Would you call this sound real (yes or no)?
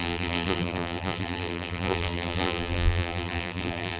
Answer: no